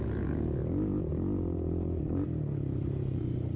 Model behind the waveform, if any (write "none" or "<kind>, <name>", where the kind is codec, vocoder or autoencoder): none